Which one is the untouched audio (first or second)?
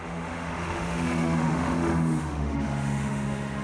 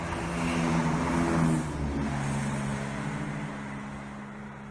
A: second